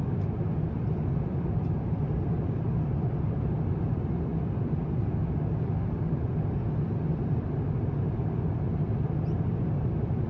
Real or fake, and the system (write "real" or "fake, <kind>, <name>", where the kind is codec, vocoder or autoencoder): fake, vocoder, BigVGAN v2